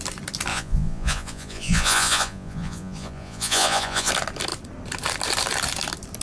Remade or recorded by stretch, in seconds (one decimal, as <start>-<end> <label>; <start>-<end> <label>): 0.0-0.5 recorded; 0.5-4.1 remade; 4.1-6.2 recorded